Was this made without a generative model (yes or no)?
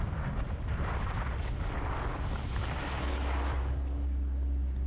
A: yes